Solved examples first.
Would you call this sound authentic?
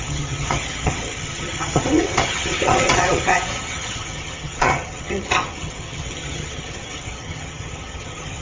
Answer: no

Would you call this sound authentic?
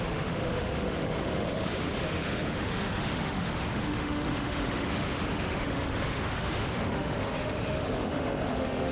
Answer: no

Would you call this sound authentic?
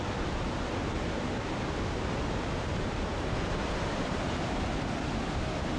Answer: yes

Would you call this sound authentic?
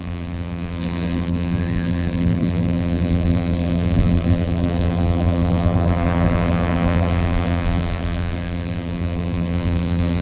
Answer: no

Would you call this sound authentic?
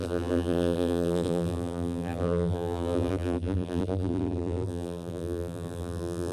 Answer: no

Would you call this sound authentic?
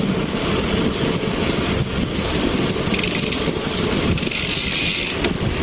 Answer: yes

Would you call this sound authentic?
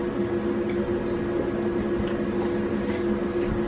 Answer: yes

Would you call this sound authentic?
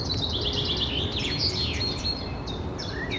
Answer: yes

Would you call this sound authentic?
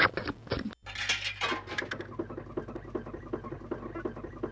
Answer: yes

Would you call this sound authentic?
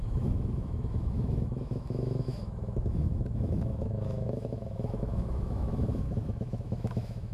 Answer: no